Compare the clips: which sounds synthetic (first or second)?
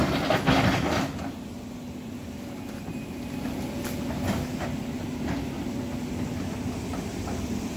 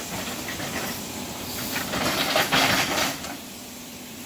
second